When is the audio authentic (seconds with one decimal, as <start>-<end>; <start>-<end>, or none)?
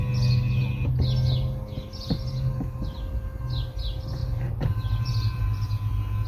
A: 0.0-4.2; 5.4-6.3